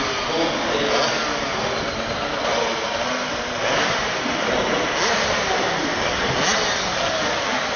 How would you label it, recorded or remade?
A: recorded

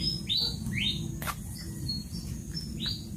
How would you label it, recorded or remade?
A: recorded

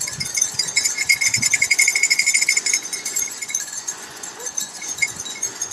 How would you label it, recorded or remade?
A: remade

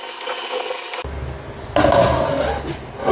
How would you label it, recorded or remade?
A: recorded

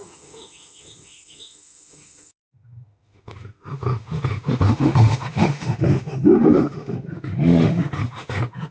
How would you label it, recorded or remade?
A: remade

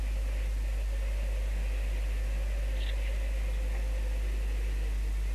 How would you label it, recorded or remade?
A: recorded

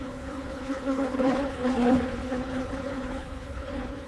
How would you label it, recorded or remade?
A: remade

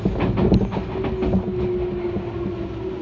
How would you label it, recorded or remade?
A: recorded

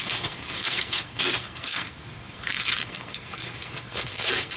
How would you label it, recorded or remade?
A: remade